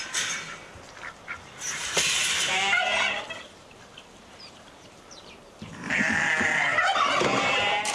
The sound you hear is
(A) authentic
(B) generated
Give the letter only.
B